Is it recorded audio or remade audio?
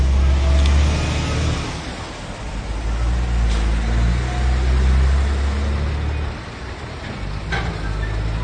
recorded